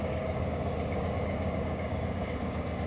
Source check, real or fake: fake